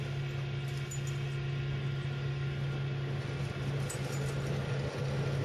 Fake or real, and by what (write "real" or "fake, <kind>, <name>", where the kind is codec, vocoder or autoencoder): real